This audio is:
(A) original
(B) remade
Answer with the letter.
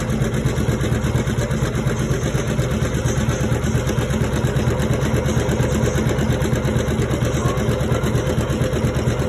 A